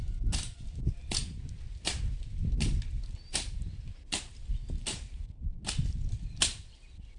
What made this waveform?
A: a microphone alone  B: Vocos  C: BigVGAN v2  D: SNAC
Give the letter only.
A